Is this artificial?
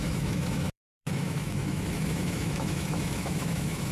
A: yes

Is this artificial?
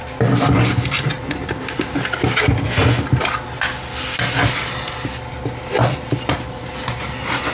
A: no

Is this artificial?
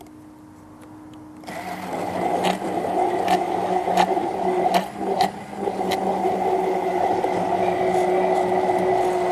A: no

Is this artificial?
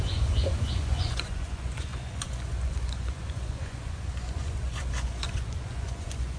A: yes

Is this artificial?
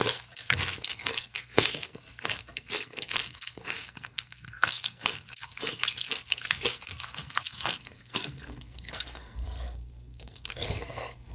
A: yes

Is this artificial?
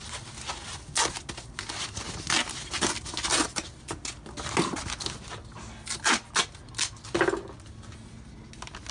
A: no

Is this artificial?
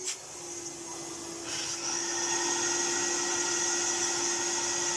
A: no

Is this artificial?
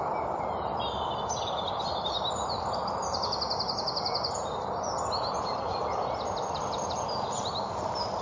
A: no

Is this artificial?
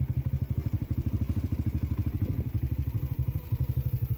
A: yes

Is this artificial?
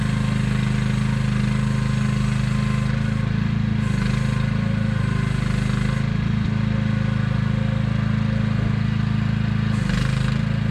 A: no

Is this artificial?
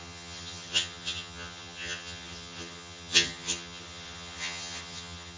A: yes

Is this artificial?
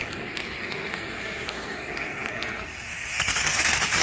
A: yes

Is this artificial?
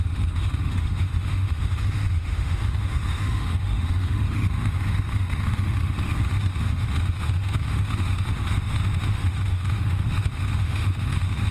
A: yes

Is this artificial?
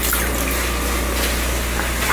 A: no